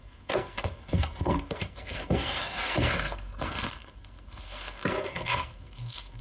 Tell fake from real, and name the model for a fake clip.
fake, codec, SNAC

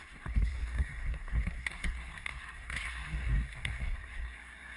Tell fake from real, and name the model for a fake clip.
fake, codec, SNAC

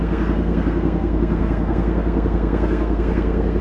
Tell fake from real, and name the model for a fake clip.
fake, codec, SNAC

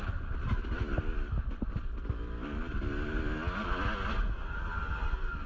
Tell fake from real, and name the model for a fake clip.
real